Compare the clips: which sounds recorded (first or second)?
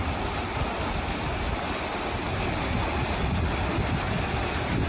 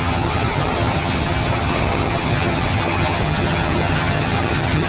first